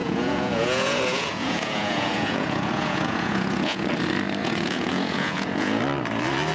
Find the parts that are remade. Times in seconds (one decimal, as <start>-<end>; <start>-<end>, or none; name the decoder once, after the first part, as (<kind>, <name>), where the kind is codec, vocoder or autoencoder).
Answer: 0.0-3.9 (vocoder, Vocos); 4.4-5.8